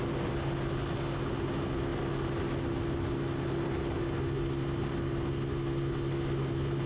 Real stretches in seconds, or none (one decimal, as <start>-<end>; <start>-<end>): 0.0-6.9